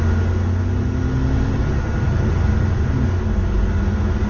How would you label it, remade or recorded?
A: recorded